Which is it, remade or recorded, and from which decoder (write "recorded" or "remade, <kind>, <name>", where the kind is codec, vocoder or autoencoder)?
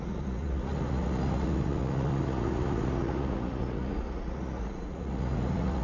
remade, vocoder, Vocos